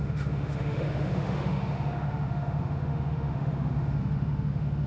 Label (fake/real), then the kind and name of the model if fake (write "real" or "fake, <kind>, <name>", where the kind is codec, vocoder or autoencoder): fake, autoencoder, DAC-VAE